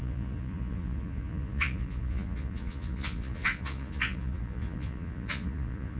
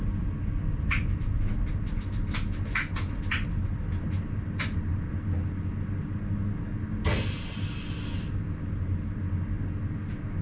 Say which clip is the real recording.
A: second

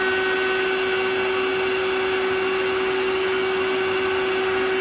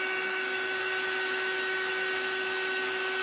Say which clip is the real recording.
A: first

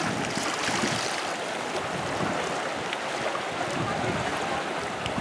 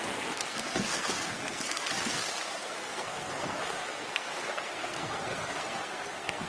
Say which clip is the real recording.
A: first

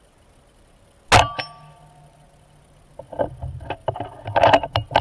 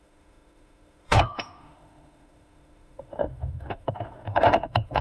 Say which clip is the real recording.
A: first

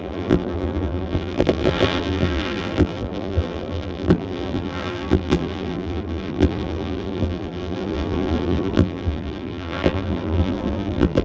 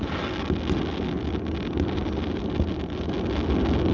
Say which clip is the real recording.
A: second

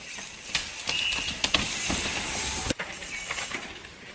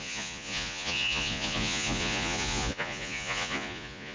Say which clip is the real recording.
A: first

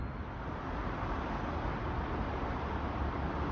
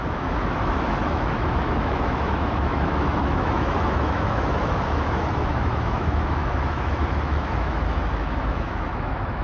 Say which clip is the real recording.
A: first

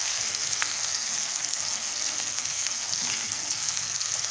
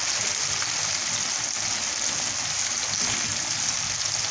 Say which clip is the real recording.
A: second